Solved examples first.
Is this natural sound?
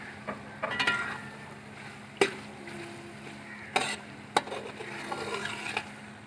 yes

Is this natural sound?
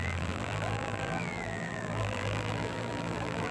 no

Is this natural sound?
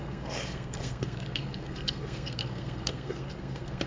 no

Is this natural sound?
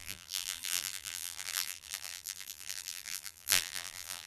no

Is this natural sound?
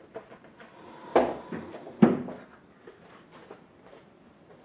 yes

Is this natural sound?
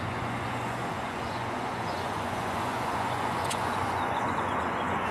no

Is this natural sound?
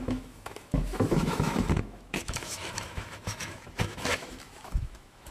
no